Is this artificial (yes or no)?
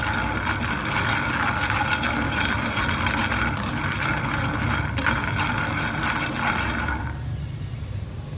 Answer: no